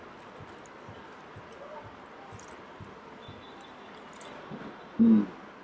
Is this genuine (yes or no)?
yes